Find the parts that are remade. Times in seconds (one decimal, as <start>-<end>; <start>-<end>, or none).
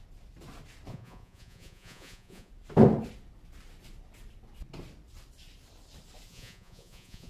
0.9-2.5; 6.3-7.3